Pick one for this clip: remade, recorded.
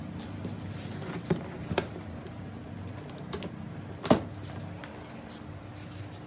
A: recorded